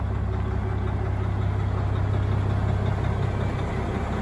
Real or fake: real